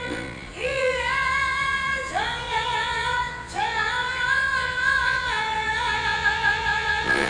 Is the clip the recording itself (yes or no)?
no